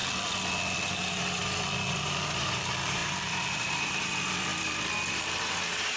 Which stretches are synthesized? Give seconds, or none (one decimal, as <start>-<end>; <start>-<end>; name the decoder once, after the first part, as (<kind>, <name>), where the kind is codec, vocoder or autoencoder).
0.9-1.4 (vocoder, BigVGAN v2); 1.9-4.5; 5.1-6.0